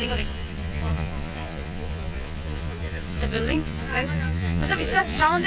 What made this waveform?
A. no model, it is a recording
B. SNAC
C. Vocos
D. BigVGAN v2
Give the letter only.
C